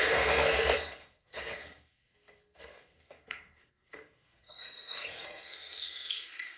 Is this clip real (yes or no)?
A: no